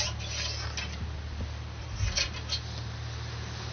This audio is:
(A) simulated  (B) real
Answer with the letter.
B